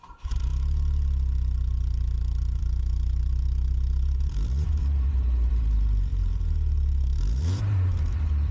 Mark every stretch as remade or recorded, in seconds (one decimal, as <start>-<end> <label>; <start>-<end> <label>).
0.0-0.5 remade; 0.5-2.6 recorded; 2.6-8.5 remade